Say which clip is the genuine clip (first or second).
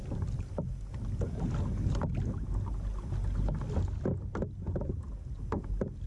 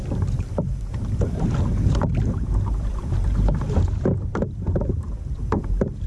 first